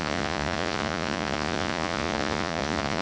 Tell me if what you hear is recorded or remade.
remade